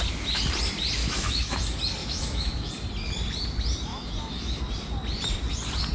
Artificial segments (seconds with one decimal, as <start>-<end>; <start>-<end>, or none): 1.0-1.6; 2.0-2.7; 3.9-4.6